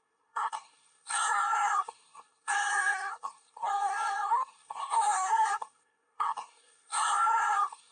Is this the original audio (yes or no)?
no